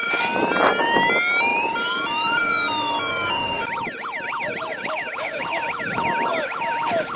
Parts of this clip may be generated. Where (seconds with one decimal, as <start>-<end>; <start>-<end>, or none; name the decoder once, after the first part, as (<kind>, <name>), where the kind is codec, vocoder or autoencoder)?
1.5-5.8 (vocoder, BigVGAN v2)

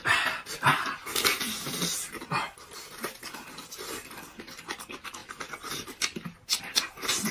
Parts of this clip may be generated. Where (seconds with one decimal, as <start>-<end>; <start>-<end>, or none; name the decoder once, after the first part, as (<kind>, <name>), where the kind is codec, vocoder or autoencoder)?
none

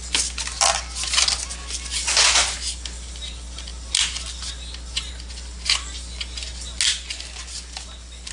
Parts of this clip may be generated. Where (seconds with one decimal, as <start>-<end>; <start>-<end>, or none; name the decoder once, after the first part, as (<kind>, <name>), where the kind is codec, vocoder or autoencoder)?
none

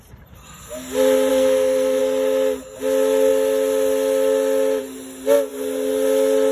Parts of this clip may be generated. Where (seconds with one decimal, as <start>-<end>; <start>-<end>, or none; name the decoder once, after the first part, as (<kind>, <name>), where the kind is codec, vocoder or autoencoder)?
1.3-2.0 (codec, SNAC)